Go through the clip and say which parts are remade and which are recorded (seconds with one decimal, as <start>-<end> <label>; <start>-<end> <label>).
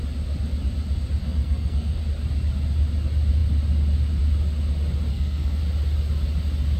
0.0-1.2 recorded; 1.2-2.0 remade; 2.0-5.1 recorded; 5.1-5.6 remade; 5.6-6.8 recorded